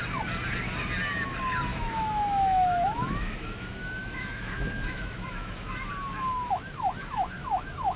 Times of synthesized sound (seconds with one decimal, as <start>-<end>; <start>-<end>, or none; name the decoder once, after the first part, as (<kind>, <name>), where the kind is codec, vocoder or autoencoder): 1.7-5.9 (autoencoder, DAC-VAE); 7.0-8.0